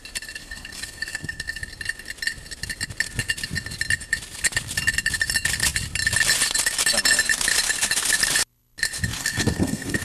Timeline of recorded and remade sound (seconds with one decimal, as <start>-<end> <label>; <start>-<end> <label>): 0.0-0.4 recorded; 0.4-1.6 remade; 1.6-9.2 recorded; 9.2-10.0 remade